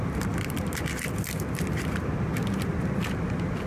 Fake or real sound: real